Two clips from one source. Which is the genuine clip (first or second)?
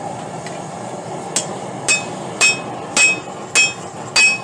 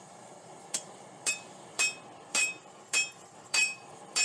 first